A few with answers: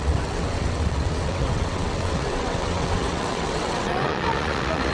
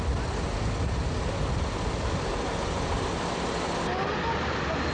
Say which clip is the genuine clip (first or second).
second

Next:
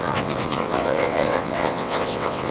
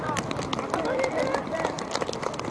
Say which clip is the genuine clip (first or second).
second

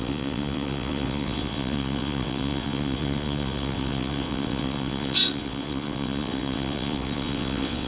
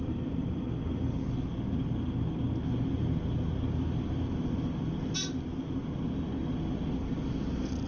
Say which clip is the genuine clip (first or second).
second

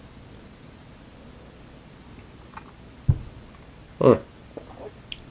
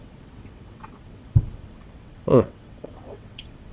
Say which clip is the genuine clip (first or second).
first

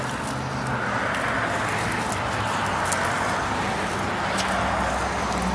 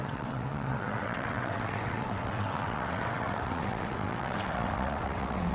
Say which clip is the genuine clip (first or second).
first